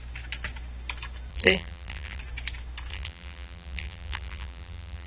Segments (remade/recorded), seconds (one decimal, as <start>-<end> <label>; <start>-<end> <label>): 0.0-1.3 recorded; 1.3-2.2 remade; 2.2-2.9 recorded; 2.9-5.1 remade